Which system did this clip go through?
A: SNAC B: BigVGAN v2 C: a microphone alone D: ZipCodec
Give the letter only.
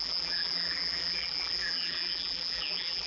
B